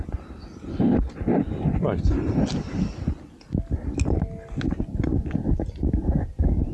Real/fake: real